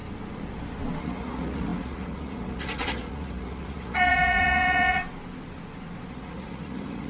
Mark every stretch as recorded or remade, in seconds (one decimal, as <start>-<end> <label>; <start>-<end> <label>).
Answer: 0.0-1.0 recorded; 1.0-5.0 remade; 5.0-6.1 recorded; 6.1-7.1 remade